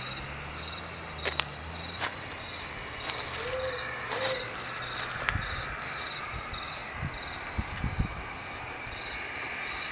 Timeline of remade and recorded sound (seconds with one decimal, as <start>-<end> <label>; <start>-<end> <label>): 0.0-9.9 recorded